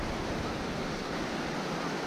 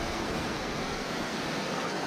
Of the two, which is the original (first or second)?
first